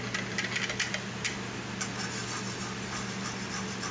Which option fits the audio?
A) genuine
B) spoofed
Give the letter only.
A